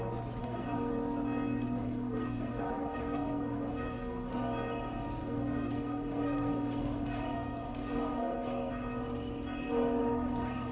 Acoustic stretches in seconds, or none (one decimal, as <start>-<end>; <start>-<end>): 0.0-0.4; 0.9-1.8; 4.3-5.2; 8.7-10.0